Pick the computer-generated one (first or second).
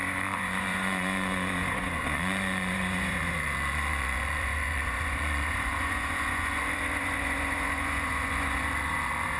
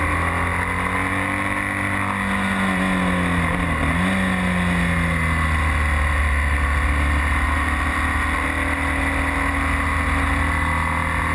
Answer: first